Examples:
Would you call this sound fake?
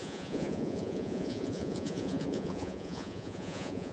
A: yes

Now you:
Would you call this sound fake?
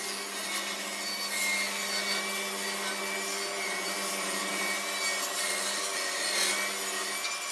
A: no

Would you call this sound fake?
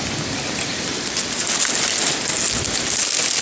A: no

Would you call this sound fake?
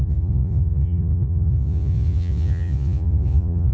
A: yes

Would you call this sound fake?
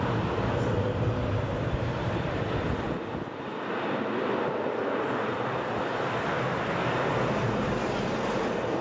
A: no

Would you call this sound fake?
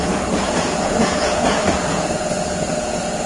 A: yes